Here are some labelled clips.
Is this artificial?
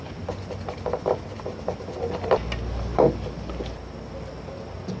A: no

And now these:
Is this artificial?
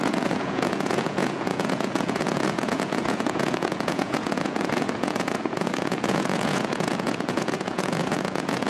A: yes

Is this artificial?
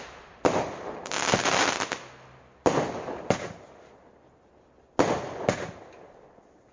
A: no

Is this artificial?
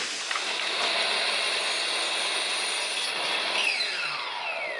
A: no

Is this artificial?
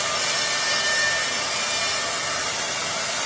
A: no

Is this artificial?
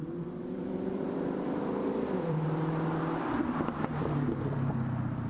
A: yes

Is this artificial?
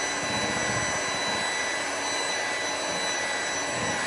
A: no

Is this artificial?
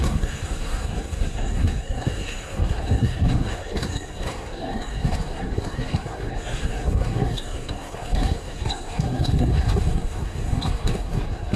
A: yes